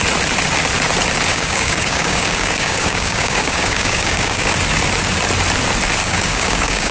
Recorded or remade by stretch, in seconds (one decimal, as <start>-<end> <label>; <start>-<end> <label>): 0.0-1.3 recorded; 1.3-4.5 remade; 4.5-6.0 recorded; 6.0-6.9 remade

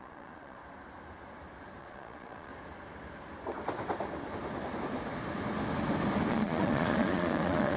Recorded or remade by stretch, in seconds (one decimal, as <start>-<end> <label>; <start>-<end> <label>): 0.0-0.6 remade; 0.6-1.8 recorded; 1.8-2.5 remade; 2.5-6.3 recorded; 6.3-7.8 remade

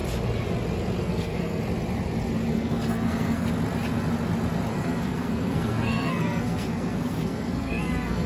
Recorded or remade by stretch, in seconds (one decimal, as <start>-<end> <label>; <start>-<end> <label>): 0.0-1.0 recorded; 1.0-1.6 remade; 1.6-2.5 recorded; 2.5-3.5 remade; 3.5-4.7 recorded; 4.7-8.3 remade

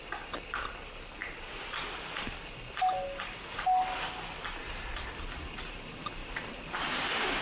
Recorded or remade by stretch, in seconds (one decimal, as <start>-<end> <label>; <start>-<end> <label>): 0.0-1.2 recorded; 1.2-2.0 remade; 2.0-4.6 recorded; 4.6-5.1 remade; 5.1-6.2 recorded; 6.2-7.4 remade

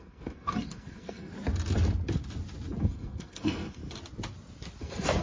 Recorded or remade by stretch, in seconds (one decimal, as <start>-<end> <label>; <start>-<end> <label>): 0.0-1.3 remade; 1.3-2.8 recorded; 2.8-3.8 remade; 3.8-4.8 recorded; 4.8-5.2 remade